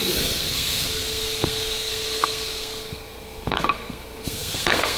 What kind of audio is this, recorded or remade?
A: remade